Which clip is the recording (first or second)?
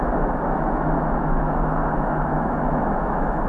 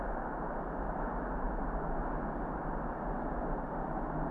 second